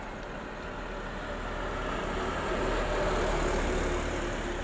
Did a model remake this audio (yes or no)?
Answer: no